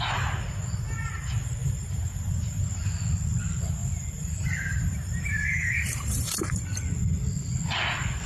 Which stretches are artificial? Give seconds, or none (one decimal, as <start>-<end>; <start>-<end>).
1.6-2.6; 3.8-6.5